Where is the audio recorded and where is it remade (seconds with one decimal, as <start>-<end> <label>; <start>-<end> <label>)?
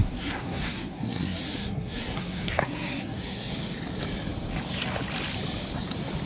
0.0-3.5 remade; 3.5-6.3 recorded